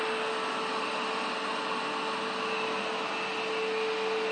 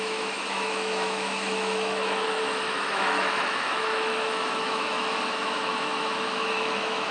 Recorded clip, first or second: first